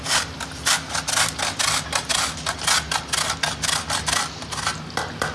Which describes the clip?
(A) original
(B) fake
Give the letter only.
A